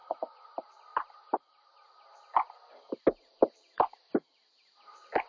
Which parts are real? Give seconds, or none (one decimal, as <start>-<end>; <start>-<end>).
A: 0.5-5.3